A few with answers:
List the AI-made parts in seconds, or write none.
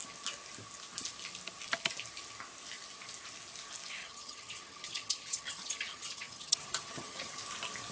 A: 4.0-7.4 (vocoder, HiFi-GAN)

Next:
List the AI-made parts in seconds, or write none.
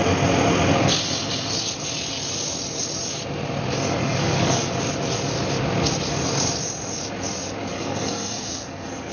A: 4.0-4.7 (codec, SNAC); 7.7-9.1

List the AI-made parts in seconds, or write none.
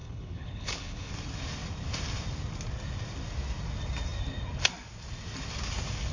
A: 0.0-1.1 (codec, HILCodec)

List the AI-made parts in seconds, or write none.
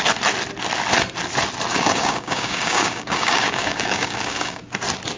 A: 1.7-4.6 (codec, DAC)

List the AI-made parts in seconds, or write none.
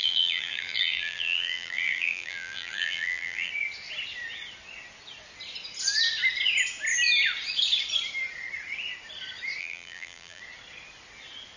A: 0.0-3.5 (vocoder, BigVGAN v2); 9.6-10.4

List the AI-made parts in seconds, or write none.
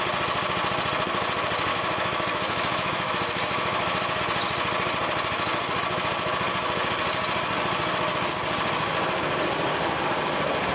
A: 1.7-4.2 (autoencoder, DAC-VAE)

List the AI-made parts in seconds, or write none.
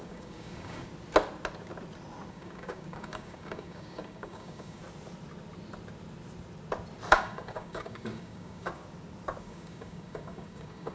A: 0.0-0.9 (codec, DAC); 2.3-4.8; 7.1-8.8; 9.4-10.9